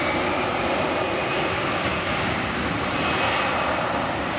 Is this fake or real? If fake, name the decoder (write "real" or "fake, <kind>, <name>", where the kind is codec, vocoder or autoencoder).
real